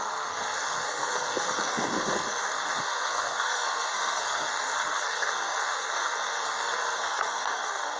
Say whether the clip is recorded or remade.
remade